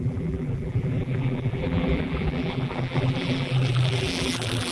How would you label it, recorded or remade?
remade